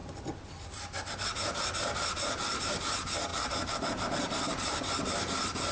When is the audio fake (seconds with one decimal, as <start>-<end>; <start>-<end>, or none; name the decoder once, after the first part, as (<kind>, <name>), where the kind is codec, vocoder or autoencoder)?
3.3-4.9 (vocoder, BigVGAN v2)